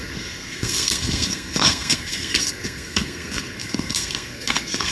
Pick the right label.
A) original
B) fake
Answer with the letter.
B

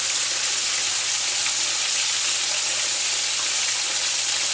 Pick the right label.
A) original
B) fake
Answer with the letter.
A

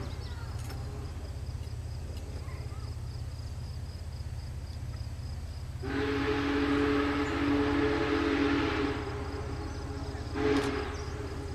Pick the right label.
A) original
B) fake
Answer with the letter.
A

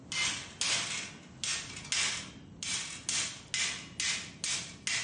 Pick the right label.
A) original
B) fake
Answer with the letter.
A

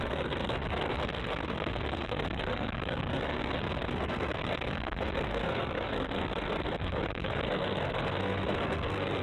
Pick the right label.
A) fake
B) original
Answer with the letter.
A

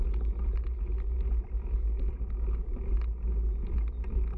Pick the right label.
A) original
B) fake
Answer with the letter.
A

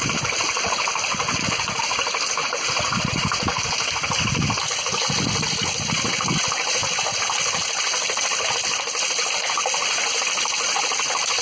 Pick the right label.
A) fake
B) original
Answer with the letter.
B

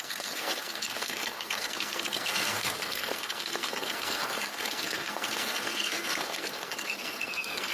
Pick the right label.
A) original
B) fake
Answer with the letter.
B